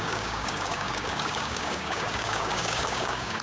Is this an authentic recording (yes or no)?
no